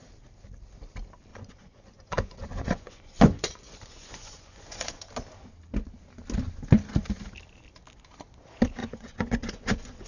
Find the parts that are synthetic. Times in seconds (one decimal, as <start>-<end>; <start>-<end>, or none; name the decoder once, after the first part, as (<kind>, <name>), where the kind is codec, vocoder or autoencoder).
1.3-5.1 (vocoder, Vocos); 8.8-10.1